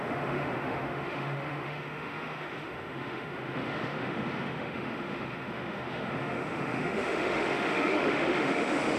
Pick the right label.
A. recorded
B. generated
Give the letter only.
B